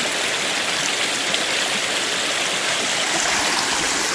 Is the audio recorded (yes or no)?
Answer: yes